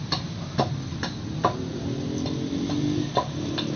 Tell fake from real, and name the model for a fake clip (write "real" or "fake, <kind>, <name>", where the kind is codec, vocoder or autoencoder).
real